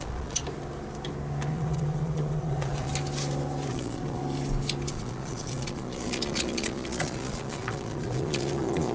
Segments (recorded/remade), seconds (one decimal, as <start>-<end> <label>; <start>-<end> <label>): 0.0-0.4 remade; 0.4-1.5 recorded; 1.5-2.9 remade; 2.9-3.7 recorded; 3.7-4.2 remade; 4.2-4.9 recorded; 4.9-8.9 remade